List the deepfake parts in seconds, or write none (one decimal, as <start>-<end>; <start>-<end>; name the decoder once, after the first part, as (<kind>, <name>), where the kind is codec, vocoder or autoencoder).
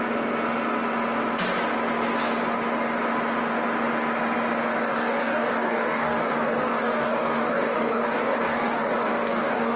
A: 4.9-9.8 (codec, DAC)